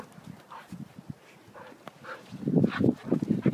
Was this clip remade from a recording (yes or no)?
no